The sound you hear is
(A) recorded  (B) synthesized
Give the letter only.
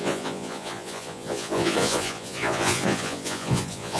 B